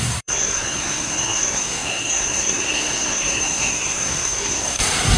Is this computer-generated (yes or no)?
yes